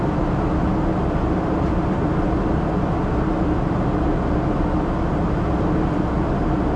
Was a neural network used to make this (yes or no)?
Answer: no